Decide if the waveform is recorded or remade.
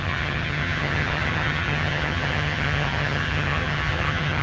remade